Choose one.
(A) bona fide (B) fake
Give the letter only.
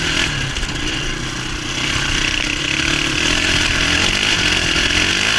A